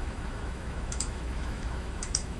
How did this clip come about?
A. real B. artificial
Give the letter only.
B